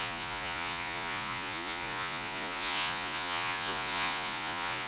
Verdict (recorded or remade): remade